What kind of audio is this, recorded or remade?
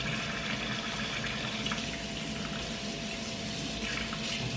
recorded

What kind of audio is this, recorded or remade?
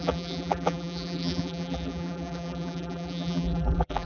remade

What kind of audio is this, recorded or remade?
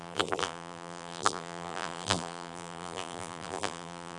remade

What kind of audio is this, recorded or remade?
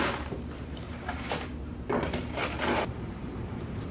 remade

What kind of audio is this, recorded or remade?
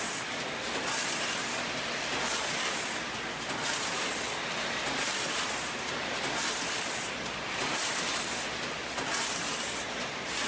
recorded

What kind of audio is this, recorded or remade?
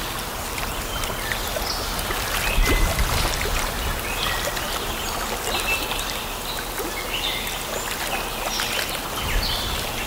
recorded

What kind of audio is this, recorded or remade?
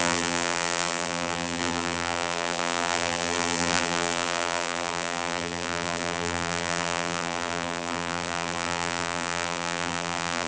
remade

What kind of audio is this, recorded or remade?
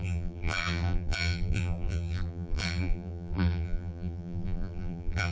remade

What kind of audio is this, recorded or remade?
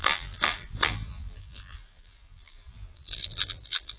remade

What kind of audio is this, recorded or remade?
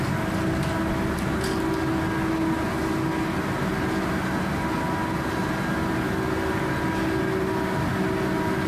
recorded